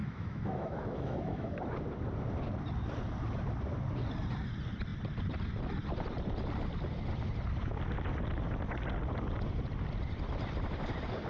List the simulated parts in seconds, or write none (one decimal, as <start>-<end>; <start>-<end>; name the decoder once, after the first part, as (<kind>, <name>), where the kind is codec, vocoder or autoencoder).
0.0-1.6 (autoencoder, DAC-VAE)

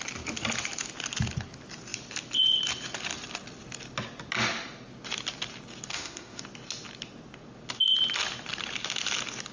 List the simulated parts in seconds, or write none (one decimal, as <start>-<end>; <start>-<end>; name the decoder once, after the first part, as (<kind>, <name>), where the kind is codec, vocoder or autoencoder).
5.9-6.4 (autoencoder, DAC-VAE)

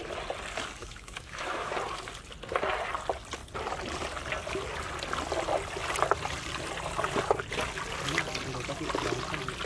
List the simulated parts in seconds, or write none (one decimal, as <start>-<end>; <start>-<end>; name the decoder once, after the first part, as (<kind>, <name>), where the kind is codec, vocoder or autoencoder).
0.8-1.7 (autoencoder, DAC-VAE)

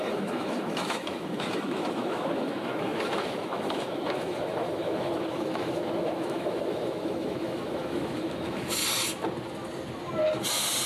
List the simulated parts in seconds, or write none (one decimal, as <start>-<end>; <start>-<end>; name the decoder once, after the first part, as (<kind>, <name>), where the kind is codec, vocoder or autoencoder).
0.0-8.8 (autoencoder, DAC-VAE)

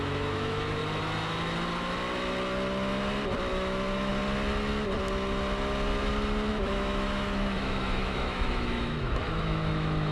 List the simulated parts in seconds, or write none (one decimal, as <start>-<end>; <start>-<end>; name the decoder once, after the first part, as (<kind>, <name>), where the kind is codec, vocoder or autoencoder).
0.0-0.8 (autoencoder, DAC-VAE); 3.5-4.1; 6.5-10.1

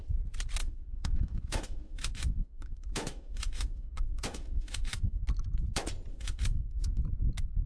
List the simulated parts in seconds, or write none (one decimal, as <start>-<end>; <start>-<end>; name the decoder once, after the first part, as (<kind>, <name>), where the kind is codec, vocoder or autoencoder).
0.6-5.2 (autoencoder, DAC-VAE); 6.1-7.0